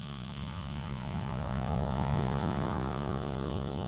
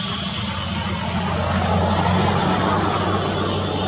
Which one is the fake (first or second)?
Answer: first